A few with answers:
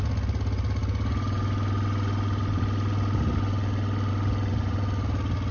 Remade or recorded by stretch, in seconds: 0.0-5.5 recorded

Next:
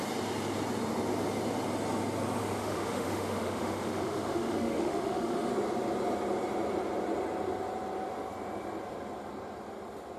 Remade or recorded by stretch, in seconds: 0.0-2.4 recorded; 2.4-5.5 remade; 5.5-10.2 recorded

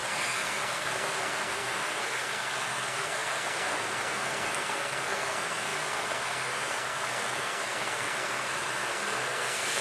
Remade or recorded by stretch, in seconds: 0.0-9.8 remade